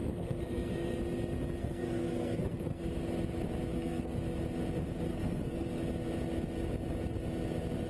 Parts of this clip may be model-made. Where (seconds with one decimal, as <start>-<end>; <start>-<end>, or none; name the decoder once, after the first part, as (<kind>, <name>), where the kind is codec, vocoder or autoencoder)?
0.0-1.0 (codec, SNAC); 1.6-2.8; 3.7-4.2; 5.1-5.8